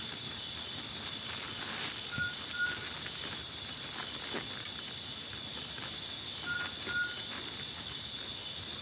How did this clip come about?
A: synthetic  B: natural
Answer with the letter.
B